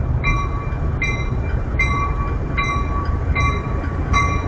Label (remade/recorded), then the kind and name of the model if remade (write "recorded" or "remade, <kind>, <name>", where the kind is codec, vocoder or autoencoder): recorded